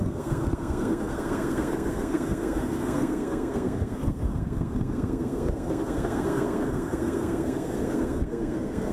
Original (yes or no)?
no